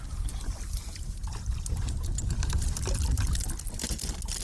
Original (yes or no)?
yes